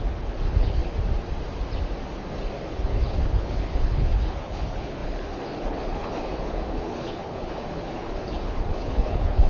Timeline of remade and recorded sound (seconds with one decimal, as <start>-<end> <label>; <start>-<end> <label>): 0.0-0.8 remade; 0.8-2.7 recorded; 2.7-9.5 remade